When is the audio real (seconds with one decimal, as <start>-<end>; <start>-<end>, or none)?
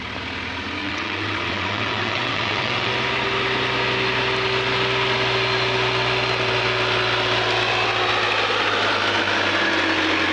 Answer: 0.0-0.8; 2.9-10.3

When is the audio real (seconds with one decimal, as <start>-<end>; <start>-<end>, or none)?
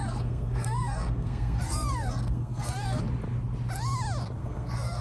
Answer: 3.0-4.4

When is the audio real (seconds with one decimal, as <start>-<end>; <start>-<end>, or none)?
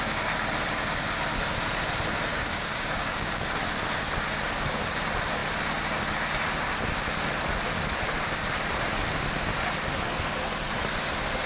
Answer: 0.0-2.3; 3.4-11.5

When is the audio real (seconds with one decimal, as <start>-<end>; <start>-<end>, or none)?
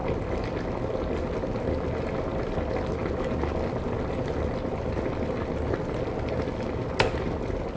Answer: 0.0-7.8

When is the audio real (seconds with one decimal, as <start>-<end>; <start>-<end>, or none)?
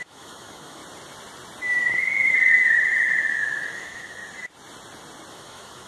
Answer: 0.8-1.8; 4.2-5.3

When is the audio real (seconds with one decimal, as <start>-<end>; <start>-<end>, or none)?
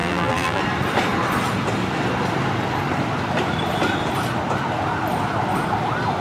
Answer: 0.6-6.2